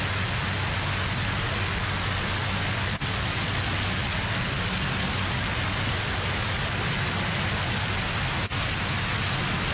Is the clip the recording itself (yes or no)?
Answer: yes